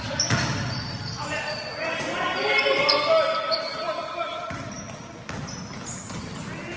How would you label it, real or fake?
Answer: real